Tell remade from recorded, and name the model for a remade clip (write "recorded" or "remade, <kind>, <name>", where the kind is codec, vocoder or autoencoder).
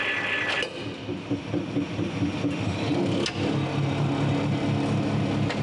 recorded